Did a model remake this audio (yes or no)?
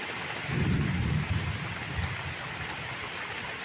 no